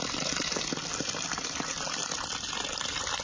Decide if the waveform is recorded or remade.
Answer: recorded